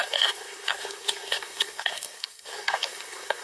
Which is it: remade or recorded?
remade